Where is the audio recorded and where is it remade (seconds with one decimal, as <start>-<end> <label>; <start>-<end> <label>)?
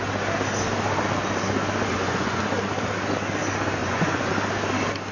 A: 0.0-1.9 recorded; 1.9-2.4 remade; 2.4-3.8 recorded; 3.8-4.3 remade; 4.3-5.1 recorded